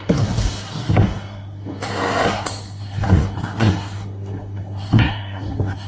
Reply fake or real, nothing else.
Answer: fake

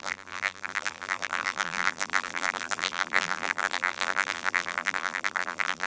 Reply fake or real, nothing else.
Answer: fake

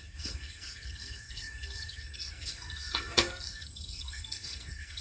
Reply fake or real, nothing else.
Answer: fake